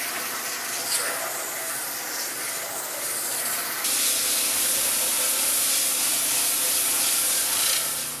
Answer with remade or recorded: recorded